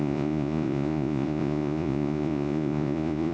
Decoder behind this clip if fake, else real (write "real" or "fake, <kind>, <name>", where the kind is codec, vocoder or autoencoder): fake, vocoder, Vocos